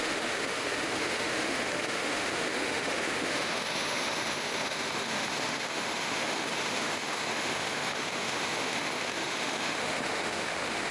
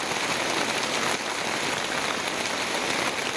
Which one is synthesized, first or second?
first